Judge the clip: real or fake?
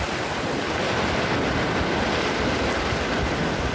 real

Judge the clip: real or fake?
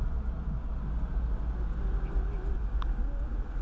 real